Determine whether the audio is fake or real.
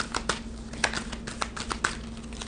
real